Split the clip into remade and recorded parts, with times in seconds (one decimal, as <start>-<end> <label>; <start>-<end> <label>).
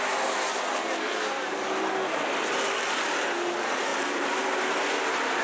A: 0.0-5.4 recorded